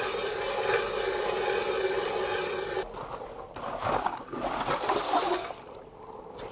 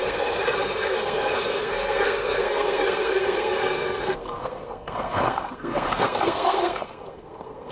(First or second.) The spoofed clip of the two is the second